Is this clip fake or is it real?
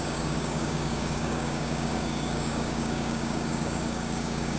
fake